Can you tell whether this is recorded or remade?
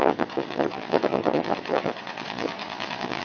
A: remade